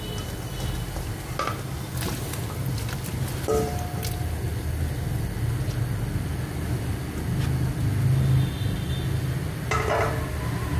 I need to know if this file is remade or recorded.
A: recorded